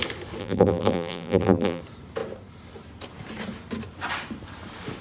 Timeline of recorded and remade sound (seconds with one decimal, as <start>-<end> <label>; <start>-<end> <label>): 0.0-0.4 recorded; 0.4-1.8 remade; 1.8-5.0 recorded